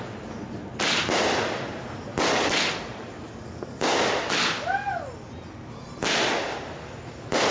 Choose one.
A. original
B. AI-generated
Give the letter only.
A